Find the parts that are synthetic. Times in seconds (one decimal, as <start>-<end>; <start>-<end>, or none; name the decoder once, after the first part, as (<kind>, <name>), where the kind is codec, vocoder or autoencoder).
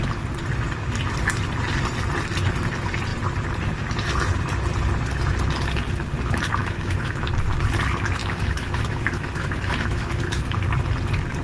6.6-7.3 (autoencoder, DAC-VAE); 8.2-10.6